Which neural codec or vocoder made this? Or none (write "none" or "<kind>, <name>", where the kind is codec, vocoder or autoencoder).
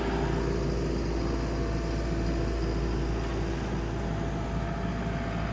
none